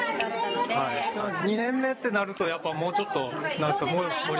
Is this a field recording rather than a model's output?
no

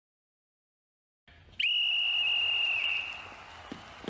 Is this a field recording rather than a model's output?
yes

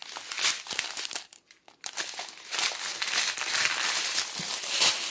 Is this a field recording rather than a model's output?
yes